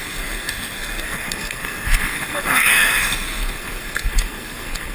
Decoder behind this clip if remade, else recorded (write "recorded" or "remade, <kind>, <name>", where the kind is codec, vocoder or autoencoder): remade, codec, SNAC